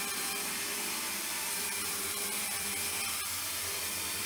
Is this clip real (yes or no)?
no